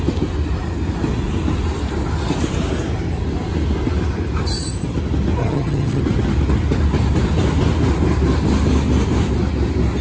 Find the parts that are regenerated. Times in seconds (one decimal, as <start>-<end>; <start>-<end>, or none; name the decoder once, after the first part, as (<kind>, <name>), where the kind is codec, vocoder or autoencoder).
5.4-6.0 (vocoder, HiFi-GAN)